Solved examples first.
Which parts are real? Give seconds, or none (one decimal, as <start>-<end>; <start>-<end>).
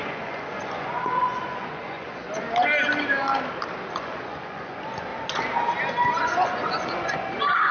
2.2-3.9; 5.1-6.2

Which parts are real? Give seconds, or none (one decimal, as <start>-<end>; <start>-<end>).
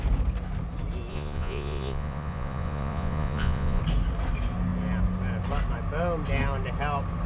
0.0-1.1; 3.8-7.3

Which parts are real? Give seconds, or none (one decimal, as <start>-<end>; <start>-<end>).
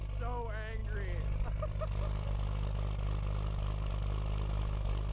0.0-5.1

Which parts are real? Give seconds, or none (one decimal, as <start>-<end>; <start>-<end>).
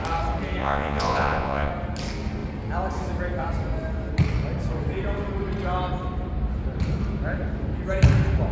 0.0-0.6; 1.7-8.5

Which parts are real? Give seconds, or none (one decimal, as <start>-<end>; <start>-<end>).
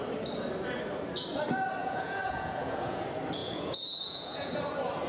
0.0-1.8; 3.0-3.4; 4.5-5.1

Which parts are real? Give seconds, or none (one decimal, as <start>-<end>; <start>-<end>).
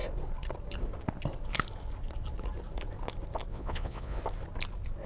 0.0-3.5; 4.2-5.1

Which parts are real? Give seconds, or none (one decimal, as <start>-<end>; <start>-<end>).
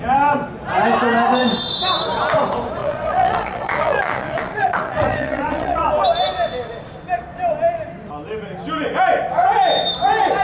0.0-2.8; 5.9-10.4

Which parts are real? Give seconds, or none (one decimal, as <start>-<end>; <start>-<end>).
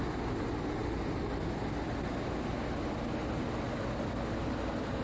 0.0-5.0